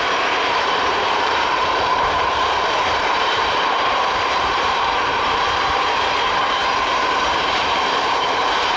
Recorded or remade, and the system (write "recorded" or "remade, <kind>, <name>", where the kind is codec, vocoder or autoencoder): remade, vocoder, BigVGAN v2